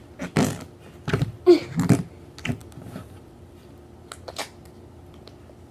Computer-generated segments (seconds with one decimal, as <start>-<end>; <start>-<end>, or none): 1.3-2.0; 2.6-3.6